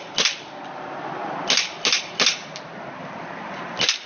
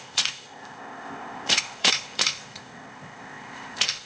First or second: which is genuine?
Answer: first